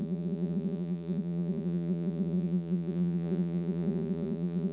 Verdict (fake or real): fake